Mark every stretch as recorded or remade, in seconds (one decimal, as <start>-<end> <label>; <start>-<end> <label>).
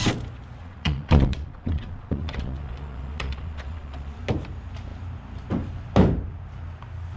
0.0-0.6 recorded; 0.6-4.2 remade; 4.2-7.2 recorded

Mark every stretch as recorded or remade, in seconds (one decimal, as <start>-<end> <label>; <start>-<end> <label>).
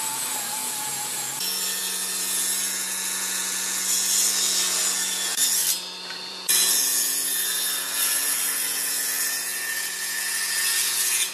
0.0-5.6 remade; 5.6-6.3 recorded; 6.3-11.3 remade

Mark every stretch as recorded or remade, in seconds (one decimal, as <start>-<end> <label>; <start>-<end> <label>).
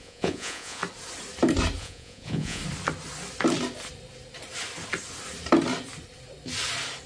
0.0-0.8 remade; 0.8-1.8 recorded; 1.8-2.6 remade; 2.6-7.1 recorded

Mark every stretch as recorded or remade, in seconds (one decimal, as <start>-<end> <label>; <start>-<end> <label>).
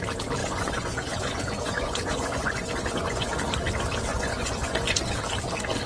0.0-0.4 recorded; 0.4-3.3 remade; 3.3-4.1 recorded; 4.1-5.1 remade; 5.1-5.9 recorded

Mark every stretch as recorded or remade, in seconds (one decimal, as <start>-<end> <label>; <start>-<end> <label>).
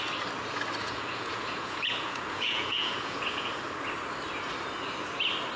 0.0-0.8 recorded; 0.8-3.5 remade; 3.5-5.6 recorded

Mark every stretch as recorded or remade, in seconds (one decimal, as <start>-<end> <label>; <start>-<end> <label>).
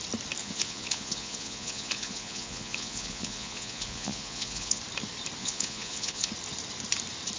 0.0-0.4 recorded; 0.4-4.8 remade; 4.8-5.4 recorded; 5.4-6.3 remade; 6.3-7.4 recorded